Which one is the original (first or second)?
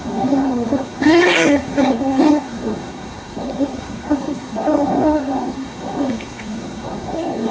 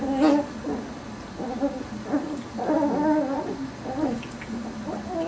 second